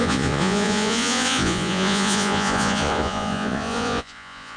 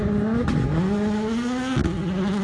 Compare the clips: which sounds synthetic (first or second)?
first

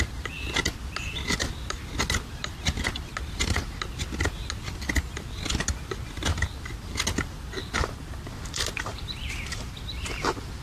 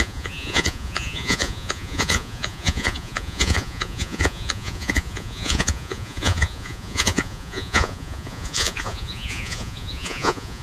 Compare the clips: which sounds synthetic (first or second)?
second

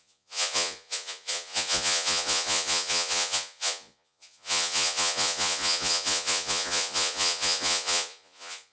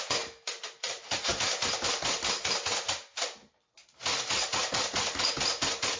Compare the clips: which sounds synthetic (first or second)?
first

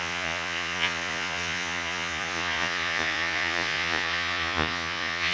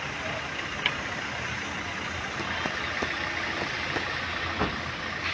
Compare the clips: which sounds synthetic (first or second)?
first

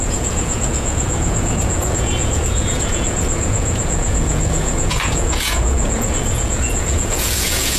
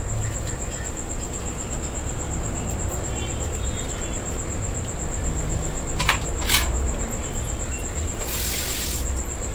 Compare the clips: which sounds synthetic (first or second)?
first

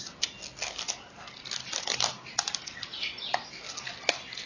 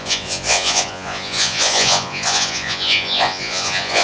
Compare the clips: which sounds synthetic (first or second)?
second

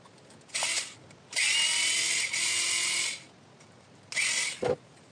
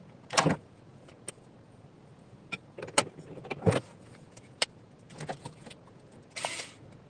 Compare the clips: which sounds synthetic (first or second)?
second